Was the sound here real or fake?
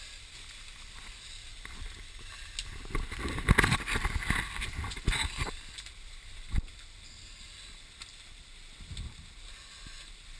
real